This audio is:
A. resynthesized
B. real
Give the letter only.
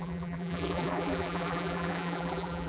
A